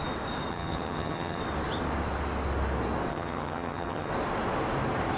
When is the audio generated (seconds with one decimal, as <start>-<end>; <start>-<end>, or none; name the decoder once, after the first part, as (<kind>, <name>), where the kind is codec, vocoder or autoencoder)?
0.5-1.4 (vocoder, HiFi-GAN); 3.1-4.1